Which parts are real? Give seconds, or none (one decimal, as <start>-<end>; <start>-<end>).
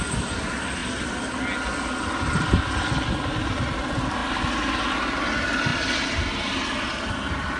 0.0-7.6